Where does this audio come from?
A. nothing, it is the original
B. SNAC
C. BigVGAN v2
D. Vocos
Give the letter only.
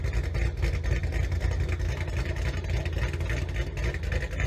A